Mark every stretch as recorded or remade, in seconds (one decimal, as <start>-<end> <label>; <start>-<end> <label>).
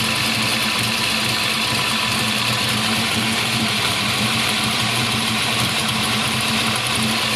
0.0-0.5 recorded; 0.5-1.1 remade; 1.1-2.1 recorded; 2.1-6.5 remade; 6.5-7.4 recorded